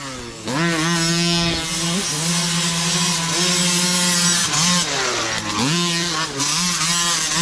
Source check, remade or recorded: recorded